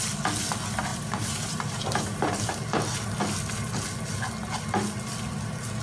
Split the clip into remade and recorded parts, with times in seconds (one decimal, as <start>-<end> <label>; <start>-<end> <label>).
0.0-0.9 recorded; 0.9-2.5 remade; 2.5-5.8 recorded